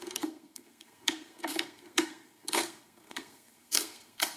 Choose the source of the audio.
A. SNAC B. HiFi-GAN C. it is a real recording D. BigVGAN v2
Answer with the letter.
A